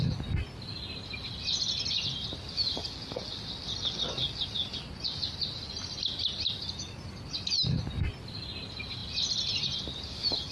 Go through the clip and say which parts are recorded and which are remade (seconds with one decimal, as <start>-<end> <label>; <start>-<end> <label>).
0.0-10.5 recorded